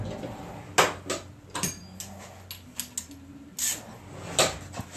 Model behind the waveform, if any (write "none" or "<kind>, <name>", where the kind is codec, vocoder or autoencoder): none